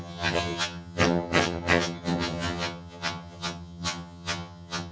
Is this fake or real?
fake